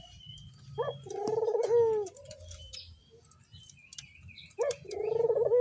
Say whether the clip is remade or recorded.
recorded